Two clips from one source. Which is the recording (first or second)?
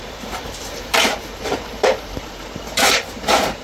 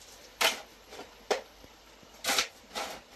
second